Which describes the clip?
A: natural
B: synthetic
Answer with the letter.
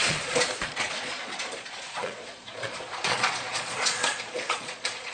B